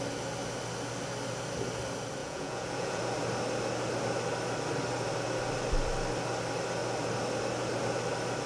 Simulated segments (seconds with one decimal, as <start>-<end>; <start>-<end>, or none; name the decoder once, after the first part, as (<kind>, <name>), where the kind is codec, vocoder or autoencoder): 2.2-3.0 (vocoder, Vocos)